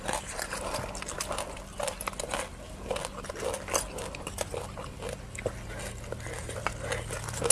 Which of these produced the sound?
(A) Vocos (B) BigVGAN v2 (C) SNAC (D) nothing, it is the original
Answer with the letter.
D